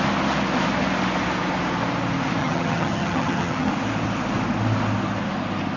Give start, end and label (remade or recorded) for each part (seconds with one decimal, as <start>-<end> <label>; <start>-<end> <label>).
0.0-2.4 recorded; 2.4-3.7 remade; 3.7-5.8 recorded